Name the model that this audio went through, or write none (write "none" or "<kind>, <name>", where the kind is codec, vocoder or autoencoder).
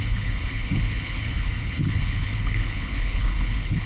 codec, HILCodec